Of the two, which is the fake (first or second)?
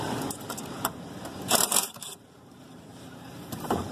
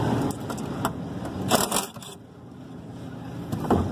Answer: first